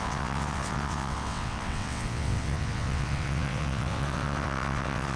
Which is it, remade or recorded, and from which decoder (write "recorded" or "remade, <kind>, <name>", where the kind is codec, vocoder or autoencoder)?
remade, vocoder, WaveNeXt